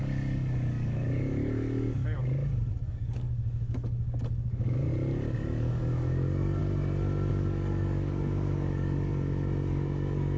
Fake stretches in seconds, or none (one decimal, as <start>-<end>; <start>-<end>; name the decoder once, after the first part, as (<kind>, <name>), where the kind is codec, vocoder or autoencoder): 0.0-4.9 (codec, DAC); 5.6-6.6; 7.3-9.1; 9.7-10.4